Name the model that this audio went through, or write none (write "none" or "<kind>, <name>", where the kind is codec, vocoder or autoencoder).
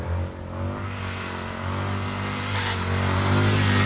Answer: none